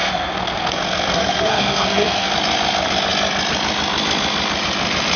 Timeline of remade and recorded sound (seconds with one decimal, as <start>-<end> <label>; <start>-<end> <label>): 0.0-2.3 remade; 2.3-5.2 recorded